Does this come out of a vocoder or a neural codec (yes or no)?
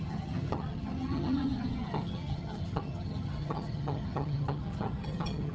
yes